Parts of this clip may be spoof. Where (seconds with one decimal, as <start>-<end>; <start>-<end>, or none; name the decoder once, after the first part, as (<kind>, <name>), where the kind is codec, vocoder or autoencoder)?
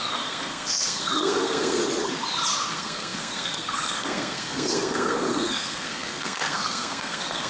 0.0-1.8 (codec, SNAC); 2.7-7.5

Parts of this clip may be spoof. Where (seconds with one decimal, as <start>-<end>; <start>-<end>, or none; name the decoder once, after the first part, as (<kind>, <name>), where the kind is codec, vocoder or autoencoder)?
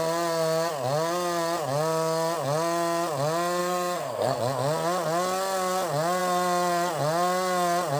3.6-4.4 (codec, SNAC)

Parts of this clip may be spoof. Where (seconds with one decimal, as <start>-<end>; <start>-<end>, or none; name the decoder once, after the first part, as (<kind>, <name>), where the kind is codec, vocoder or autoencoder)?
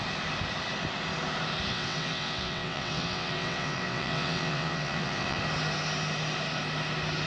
1.7-5.4 (vocoder, WaveNeXt)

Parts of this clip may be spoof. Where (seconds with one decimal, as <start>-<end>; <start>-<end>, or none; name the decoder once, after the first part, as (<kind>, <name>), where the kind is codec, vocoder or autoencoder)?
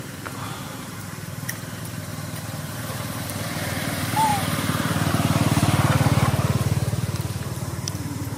0.0-8.4 (vocoder, BigVGAN v2)